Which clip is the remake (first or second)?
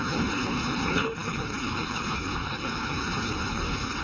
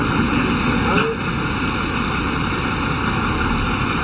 first